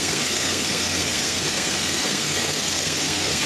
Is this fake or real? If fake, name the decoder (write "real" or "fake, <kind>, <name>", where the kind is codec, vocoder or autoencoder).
fake, codec, SNAC